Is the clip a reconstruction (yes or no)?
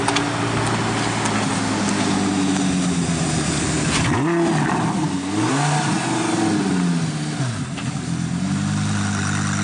no